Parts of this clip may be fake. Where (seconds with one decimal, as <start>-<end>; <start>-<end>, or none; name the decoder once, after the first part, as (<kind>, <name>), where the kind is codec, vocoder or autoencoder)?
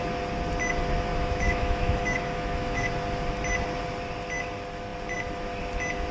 1.1-2.9 (autoencoder, DAC-VAE)